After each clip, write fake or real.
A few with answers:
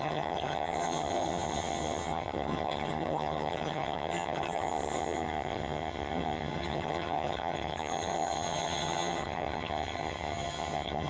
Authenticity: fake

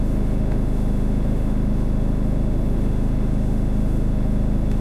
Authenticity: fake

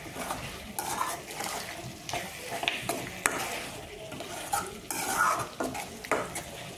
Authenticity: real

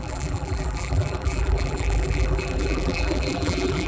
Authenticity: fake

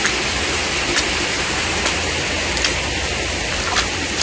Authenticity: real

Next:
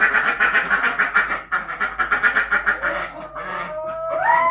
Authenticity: real